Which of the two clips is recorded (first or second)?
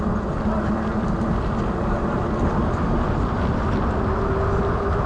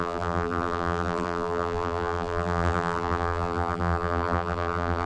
first